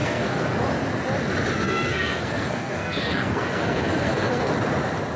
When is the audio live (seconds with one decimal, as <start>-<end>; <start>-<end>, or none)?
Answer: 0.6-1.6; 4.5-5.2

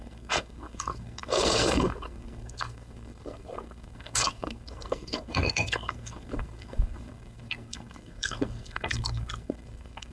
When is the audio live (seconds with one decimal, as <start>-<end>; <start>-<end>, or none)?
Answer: none

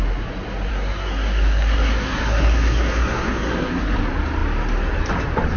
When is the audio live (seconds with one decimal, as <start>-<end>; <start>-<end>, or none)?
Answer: 0.0-0.7; 3.8-5.6

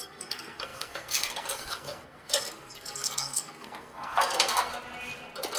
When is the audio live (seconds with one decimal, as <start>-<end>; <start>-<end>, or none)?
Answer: 4.7-5.6